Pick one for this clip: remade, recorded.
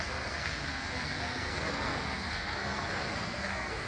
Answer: remade